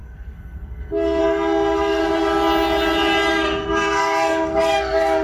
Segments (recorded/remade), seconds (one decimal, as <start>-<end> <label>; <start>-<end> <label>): 0.0-2.0 remade; 2.0-3.3 recorded; 3.3-5.2 remade